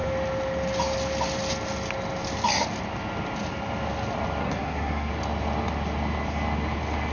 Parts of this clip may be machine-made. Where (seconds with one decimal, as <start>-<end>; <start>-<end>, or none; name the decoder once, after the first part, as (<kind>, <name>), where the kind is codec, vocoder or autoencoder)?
4.4-5.1 (codec, SNAC)